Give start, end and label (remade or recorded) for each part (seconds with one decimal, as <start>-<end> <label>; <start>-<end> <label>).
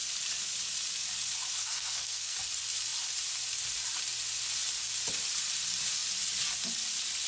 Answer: 0.0-1.6 recorded; 1.6-2.4 remade; 2.4-7.3 recorded